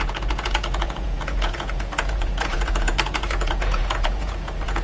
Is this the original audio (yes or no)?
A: no